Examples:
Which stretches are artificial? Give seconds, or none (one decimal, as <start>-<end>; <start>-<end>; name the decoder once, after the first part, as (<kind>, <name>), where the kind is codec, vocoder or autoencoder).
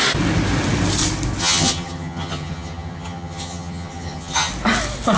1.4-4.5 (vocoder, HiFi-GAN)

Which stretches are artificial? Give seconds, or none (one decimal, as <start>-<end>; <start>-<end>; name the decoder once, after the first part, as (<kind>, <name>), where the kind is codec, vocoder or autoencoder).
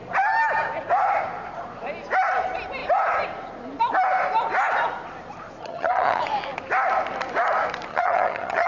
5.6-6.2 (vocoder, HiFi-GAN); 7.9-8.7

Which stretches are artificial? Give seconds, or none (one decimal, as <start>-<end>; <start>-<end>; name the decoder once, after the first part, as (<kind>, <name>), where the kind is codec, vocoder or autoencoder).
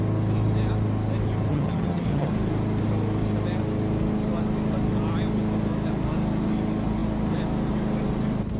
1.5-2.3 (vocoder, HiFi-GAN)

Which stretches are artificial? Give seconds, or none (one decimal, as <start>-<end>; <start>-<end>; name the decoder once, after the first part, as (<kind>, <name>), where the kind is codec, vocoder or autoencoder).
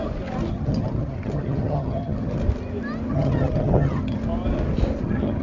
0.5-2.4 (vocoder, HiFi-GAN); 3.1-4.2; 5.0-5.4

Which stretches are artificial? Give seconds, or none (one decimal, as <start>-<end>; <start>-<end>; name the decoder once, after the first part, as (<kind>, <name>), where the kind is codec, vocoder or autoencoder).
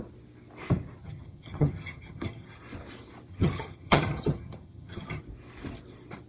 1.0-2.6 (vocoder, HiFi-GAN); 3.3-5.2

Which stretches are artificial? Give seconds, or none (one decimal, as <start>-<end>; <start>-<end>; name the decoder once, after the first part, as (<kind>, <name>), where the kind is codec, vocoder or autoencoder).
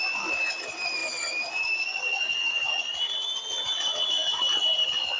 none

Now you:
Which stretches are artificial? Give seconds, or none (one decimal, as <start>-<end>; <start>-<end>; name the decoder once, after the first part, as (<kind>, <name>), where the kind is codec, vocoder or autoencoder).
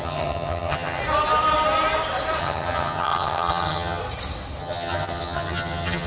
0.0-1.0 (vocoder, HiFi-GAN); 2.4-4.0; 4.6-6.1